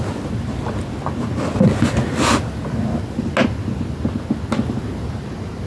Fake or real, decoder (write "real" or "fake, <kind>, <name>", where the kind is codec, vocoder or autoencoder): real